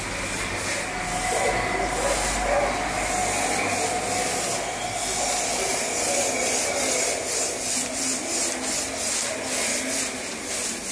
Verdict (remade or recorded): recorded